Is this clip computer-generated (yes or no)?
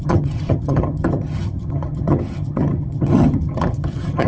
yes